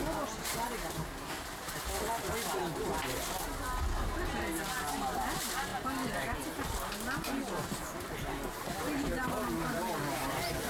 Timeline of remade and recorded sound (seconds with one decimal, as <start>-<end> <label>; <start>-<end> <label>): 0.0-10.7 recorded